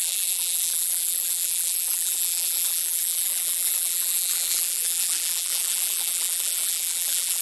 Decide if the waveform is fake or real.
fake